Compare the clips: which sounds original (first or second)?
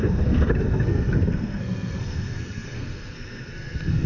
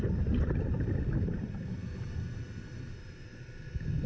second